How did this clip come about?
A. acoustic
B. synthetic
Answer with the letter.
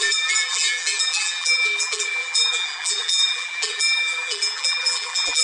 B